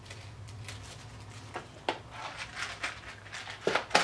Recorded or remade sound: recorded